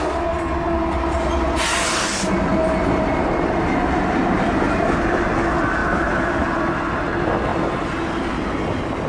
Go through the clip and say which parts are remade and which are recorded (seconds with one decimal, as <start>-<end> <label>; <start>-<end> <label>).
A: 0.0-2.6 recorded; 2.6-5.3 remade; 5.3-5.8 recorded; 5.8-6.4 remade; 6.4-9.1 recorded